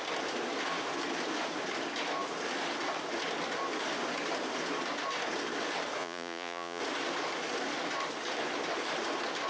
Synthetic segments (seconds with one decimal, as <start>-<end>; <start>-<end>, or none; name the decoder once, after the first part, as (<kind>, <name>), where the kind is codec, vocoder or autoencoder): 6.0-6.8 (vocoder, Vocos)